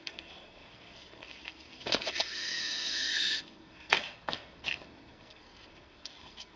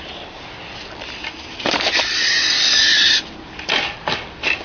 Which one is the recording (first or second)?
second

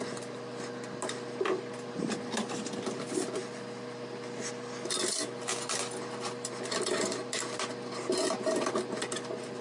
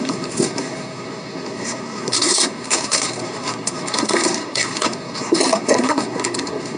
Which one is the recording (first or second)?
first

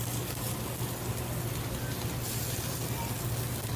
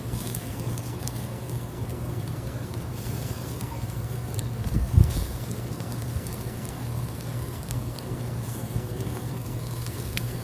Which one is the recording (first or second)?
first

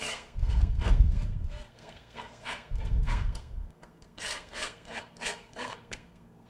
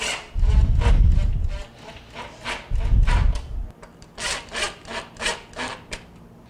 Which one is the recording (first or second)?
second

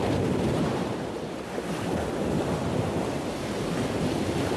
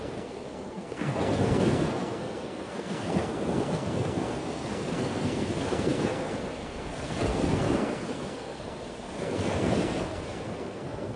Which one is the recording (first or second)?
first